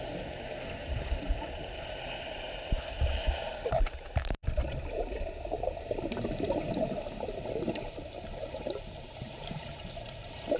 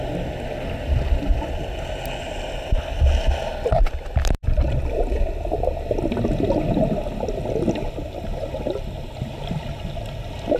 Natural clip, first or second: second